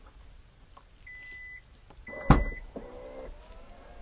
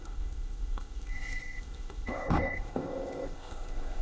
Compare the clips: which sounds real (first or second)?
first